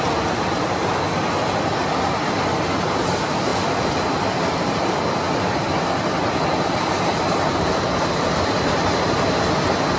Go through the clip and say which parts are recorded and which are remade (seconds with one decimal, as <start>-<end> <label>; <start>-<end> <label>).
0.0-10.0 recorded